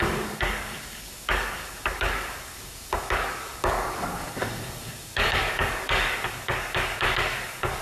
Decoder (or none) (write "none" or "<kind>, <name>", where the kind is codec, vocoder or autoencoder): codec, DAC